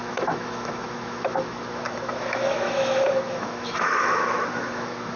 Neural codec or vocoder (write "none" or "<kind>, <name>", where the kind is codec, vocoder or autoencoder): autoencoder, DAC-VAE